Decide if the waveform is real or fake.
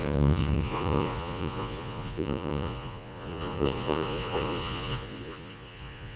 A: fake